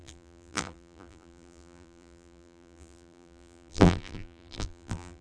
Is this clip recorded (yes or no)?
no